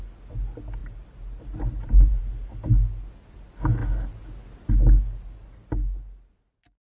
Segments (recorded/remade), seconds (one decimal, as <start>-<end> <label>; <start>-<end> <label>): 0.0-6.9 recorded